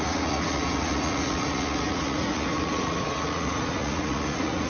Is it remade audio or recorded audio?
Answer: remade